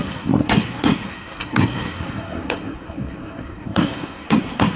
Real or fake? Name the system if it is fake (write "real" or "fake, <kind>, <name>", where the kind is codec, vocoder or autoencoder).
fake, codec, SNAC